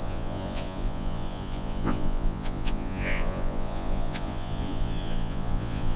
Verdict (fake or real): fake